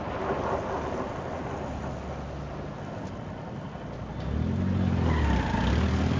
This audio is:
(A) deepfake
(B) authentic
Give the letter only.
B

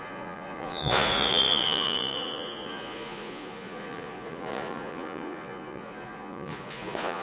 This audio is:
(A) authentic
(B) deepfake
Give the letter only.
B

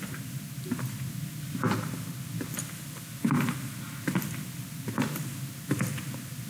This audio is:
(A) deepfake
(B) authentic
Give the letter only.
B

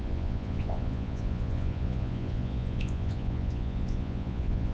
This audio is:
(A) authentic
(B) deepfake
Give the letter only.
B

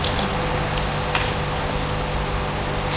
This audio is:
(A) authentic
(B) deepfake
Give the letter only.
A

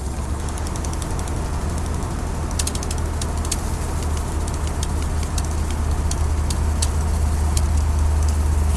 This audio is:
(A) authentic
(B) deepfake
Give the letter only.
A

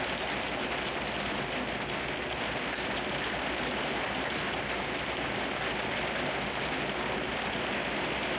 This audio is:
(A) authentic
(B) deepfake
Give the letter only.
A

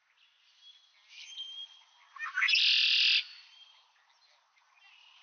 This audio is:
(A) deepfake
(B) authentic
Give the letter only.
B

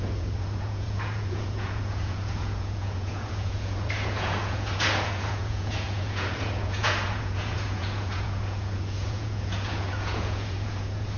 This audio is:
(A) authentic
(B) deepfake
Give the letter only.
B